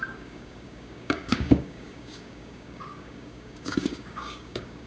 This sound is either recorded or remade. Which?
remade